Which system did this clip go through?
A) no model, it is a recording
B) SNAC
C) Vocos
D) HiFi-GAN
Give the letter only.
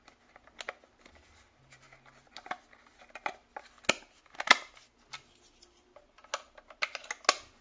A